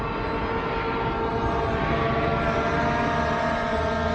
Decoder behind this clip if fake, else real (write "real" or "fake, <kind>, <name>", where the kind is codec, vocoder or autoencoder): real